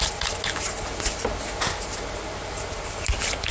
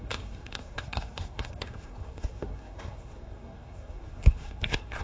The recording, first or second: first